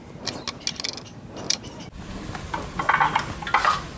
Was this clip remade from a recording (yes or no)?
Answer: no